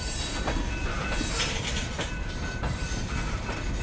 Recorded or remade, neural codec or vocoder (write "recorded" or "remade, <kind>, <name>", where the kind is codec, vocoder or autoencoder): remade, vocoder, BigVGAN v2